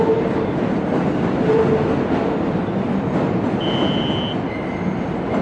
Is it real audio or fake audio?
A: real